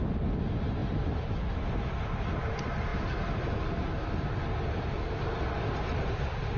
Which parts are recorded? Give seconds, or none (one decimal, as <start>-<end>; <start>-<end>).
0.0-6.6